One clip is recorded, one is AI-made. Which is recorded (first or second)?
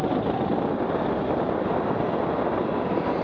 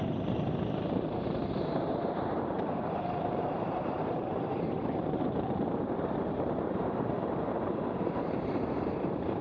first